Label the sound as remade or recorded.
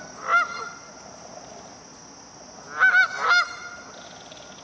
recorded